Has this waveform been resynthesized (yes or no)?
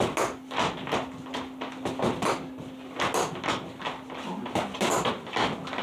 no